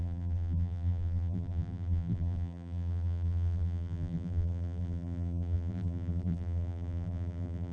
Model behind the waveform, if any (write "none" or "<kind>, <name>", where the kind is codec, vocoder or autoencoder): vocoder, BigVGAN v2